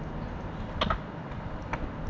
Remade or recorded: recorded